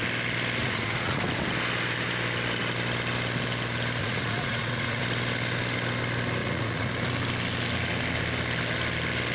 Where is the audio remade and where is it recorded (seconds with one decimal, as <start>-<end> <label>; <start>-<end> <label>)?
0.0-0.6 recorded; 0.6-1.2 remade; 1.2-4.0 recorded; 4.0-5.0 remade; 5.0-6.4 recorded; 6.4-6.9 remade; 6.9-9.3 recorded